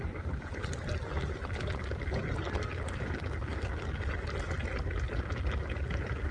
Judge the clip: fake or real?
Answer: real